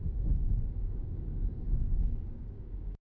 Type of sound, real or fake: fake